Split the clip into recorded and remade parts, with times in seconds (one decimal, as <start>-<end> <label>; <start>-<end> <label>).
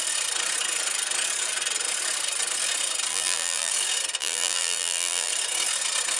0.0-3.1 recorded; 3.1-3.7 remade; 3.7-4.2 recorded; 4.2-5.3 remade; 5.3-6.2 recorded